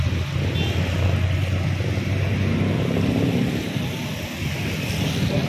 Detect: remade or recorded recorded